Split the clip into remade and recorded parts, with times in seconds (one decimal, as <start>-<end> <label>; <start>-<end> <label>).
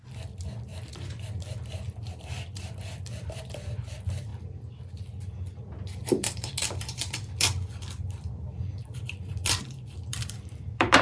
0.0-0.7 recorded; 0.7-3.4 remade; 3.4-6.0 recorded; 6.0-11.0 remade